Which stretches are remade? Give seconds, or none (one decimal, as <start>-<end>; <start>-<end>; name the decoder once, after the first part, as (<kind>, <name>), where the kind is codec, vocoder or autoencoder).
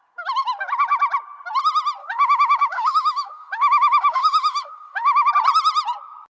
2.0-5.3 (autoencoder, DAC-VAE)